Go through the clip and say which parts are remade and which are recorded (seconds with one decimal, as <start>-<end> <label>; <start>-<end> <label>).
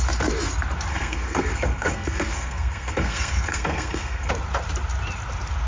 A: 0.0-0.9 recorded; 0.9-4.3 remade; 4.3-5.7 recorded